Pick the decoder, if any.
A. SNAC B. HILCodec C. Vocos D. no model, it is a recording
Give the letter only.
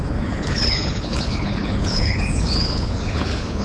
B